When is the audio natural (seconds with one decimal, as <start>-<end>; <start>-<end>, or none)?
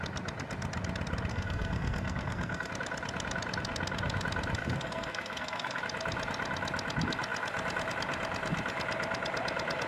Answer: 0.0-1.3; 2.7-4.6; 5.8-9.9